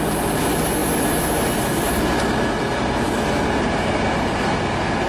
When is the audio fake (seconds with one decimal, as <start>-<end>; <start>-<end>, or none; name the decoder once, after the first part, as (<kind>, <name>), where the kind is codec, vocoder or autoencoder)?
none